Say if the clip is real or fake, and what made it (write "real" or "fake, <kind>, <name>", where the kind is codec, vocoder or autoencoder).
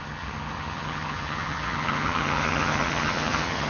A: fake, vocoder, HiFi-GAN